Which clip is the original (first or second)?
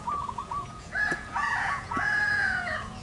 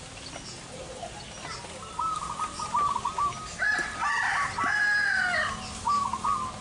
second